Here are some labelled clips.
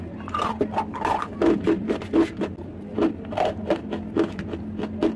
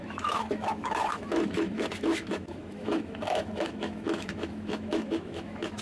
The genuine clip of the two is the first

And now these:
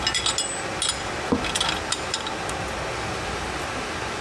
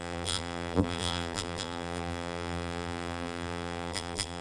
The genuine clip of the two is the first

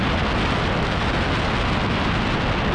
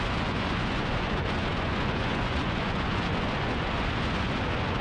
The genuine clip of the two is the first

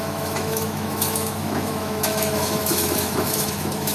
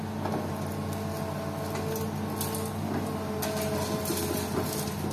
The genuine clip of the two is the second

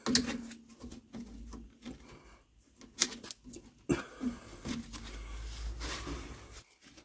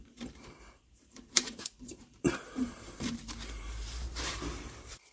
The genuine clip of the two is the first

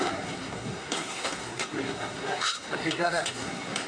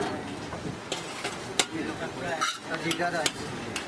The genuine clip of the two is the second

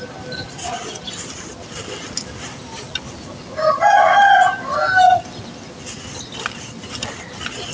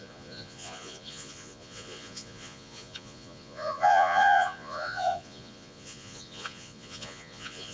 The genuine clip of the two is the first